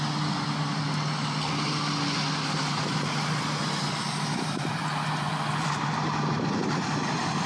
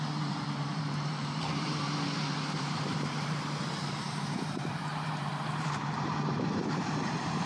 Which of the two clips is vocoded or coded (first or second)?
second